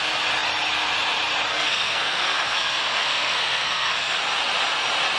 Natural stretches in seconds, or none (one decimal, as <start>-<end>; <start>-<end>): 0.0-1.5; 4.2-5.2